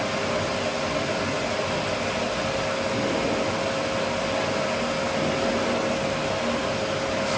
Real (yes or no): yes